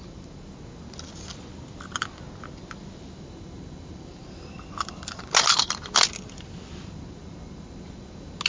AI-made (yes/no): no